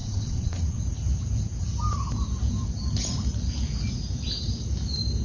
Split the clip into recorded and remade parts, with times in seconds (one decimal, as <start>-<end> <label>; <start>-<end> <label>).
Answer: 0.0-0.8 remade; 0.8-5.2 recorded